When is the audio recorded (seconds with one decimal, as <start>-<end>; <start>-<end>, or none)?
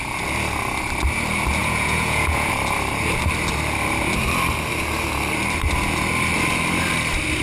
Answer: 0.0-1.6; 2.5-7.4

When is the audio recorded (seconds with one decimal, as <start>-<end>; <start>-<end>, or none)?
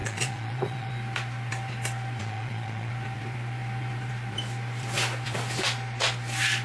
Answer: 0.9-2.2; 2.9-6.6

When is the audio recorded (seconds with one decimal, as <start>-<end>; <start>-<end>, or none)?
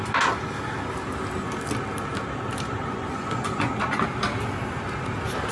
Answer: 0.0-2.8; 3.7-5.5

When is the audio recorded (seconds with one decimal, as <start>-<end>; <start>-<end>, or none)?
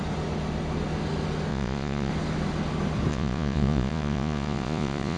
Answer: 0.0-1.5; 2.1-3.1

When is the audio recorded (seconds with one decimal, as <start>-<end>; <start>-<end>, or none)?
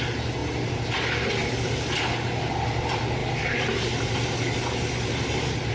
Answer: 0.0-5.7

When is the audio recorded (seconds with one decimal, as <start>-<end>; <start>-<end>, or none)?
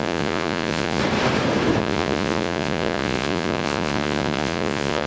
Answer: 1.0-1.8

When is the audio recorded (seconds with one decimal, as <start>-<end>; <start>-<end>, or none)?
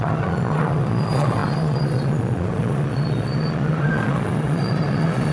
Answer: none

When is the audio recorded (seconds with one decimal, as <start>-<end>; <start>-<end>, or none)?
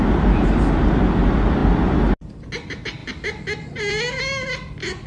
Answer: 0.0-5.1